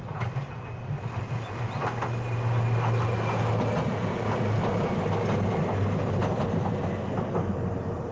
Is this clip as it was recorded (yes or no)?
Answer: yes